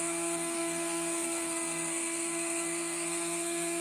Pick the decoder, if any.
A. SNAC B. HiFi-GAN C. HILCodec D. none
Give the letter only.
A